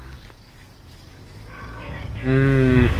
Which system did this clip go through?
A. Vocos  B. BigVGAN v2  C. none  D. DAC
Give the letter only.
D